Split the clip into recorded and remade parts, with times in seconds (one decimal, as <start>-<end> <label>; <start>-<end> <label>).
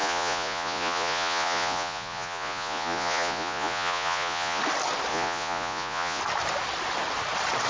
0.0-4.6 remade; 4.6-5.1 recorded; 5.1-6.2 remade; 6.2-7.7 recorded